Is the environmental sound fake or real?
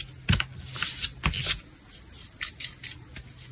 real